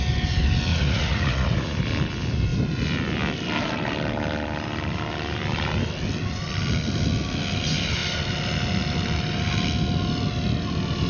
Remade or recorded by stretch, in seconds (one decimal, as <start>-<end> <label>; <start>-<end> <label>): 0.0-0.7 recorded; 0.7-1.8 remade; 1.8-11.1 recorded